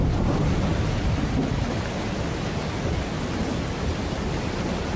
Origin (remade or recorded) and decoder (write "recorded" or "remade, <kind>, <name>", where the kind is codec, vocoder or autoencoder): recorded